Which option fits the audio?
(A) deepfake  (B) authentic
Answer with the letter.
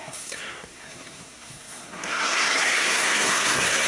A